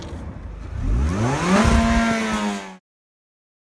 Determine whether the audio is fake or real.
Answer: real